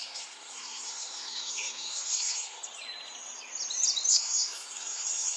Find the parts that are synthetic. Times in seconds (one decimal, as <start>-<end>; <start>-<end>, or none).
0.0-2.6; 4.1-5.4